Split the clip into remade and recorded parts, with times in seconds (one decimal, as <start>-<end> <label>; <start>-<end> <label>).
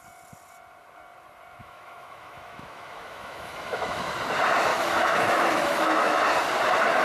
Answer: 0.0-1.6 recorded; 1.6-4.0 remade; 4.0-4.7 recorded; 4.7-6.2 remade; 6.2-7.0 recorded